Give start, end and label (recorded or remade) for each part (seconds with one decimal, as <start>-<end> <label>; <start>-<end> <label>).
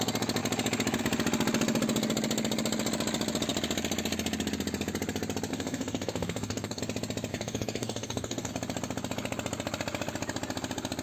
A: 0.0-5.5 recorded; 5.5-6.8 remade; 6.8-7.3 recorded; 7.3-8.5 remade; 8.5-11.0 recorded